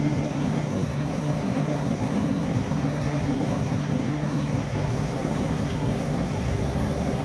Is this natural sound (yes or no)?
no